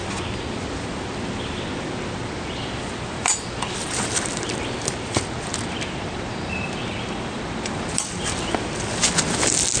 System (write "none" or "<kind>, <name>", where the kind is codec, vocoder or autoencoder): none